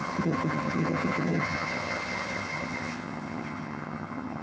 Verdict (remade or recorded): remade